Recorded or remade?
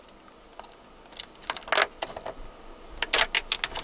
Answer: recorded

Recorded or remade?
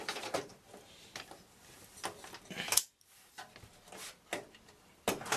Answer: recorded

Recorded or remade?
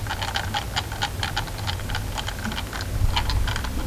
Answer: recorded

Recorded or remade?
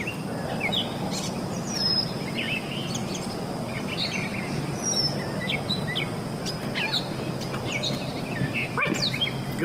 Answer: recorded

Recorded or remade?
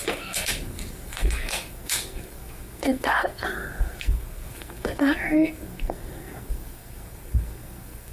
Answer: remade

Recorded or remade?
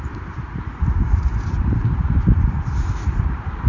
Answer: remade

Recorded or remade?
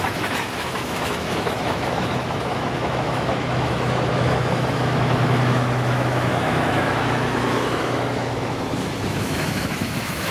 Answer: remade